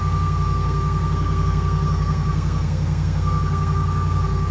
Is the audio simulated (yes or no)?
yes